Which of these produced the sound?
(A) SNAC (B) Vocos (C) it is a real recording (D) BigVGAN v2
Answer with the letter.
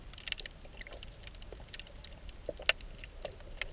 C